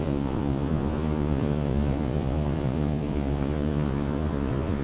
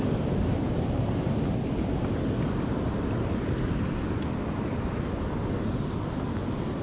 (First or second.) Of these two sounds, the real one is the second